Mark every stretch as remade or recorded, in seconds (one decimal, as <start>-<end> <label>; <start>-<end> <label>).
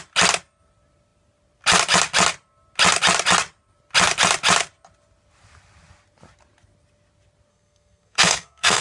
0.0-7.5 recorded; 7.5-8.8 remade